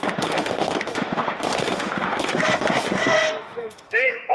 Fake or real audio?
fake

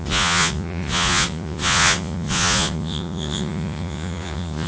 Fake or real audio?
fake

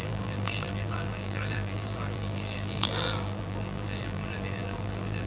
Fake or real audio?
fake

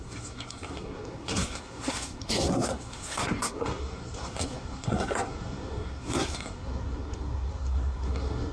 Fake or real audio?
fake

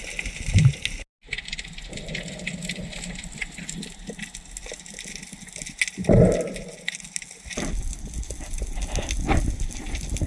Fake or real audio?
real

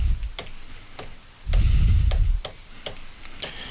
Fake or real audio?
real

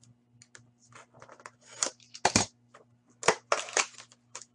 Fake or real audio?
real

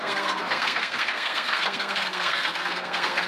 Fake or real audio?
fake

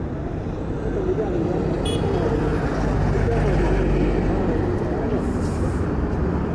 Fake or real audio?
real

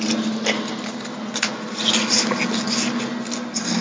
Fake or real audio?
real